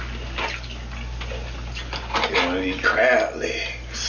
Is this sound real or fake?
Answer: real